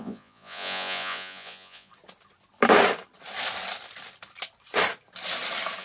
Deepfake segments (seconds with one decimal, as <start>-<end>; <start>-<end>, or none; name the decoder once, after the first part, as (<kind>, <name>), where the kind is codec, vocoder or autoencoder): 0.0-1.9 (vocoder, Vocos)

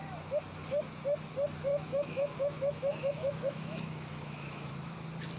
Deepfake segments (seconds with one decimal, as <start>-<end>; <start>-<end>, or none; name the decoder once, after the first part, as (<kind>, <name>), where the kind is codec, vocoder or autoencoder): 1.7-4.7 (autoencoder, DAC-VAE)

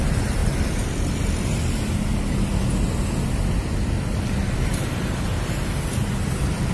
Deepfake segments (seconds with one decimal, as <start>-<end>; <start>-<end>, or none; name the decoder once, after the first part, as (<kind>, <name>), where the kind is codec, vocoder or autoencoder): none

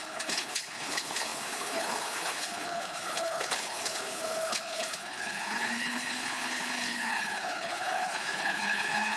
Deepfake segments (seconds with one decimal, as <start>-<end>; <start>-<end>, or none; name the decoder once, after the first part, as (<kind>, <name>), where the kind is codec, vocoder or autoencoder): 0.0-9.2 (codec, HILCodec)

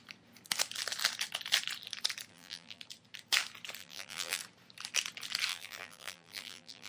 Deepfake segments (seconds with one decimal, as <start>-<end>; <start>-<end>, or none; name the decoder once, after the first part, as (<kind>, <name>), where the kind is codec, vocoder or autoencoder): 2.3-2.8 (vocoder, BigVGAN v2); 3.8-4.4; 5.5-6.9

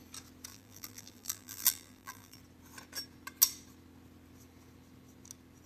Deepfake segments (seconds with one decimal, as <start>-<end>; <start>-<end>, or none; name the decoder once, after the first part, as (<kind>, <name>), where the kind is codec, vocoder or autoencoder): 0.5-2.4 (vocoder, BigVGAN v2)